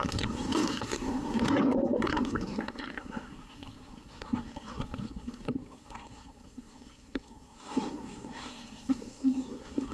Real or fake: fake